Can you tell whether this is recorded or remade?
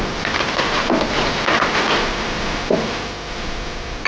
remade